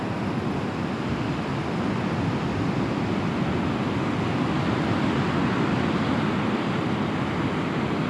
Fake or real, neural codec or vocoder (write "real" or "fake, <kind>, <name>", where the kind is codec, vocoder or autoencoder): real